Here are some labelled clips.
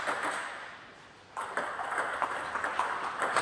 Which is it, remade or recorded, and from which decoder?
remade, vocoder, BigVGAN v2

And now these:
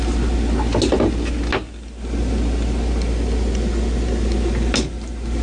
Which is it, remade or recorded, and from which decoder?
recorded